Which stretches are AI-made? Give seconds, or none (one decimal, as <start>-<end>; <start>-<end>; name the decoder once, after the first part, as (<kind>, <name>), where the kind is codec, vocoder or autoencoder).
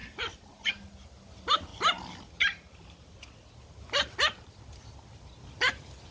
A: 0.0-0.7 (vocoder, BigVGAN v2)